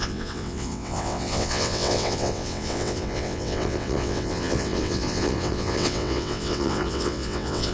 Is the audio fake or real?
fake